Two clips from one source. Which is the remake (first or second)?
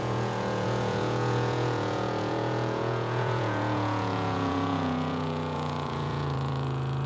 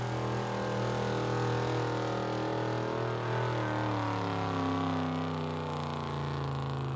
first